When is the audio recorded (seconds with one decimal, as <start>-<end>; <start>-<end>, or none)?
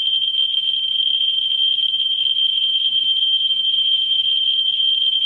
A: 0.0-2.5; 4.2-5.3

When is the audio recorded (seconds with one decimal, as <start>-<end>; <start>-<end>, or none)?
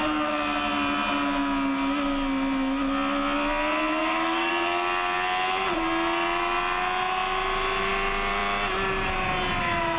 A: 0.0-4.0; 4.5-10.0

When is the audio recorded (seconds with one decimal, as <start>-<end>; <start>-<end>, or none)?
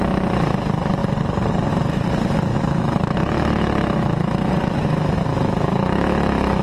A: 0.0-2.5; 4.5-5.3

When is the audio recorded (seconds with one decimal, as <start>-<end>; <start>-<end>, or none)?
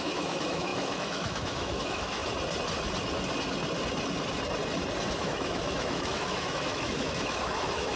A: 2.2-5.1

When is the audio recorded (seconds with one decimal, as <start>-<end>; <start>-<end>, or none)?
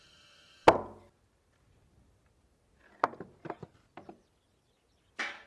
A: 0.0-5.5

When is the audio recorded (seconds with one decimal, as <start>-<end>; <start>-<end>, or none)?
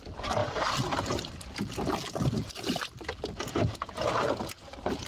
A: 0.0-5.1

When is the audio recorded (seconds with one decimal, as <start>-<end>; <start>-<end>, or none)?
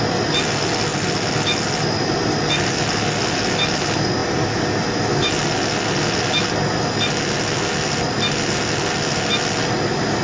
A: 0.0-10.2